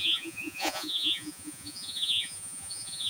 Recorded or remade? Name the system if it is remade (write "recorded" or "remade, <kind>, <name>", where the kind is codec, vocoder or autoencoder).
remade, vocoder, Vocos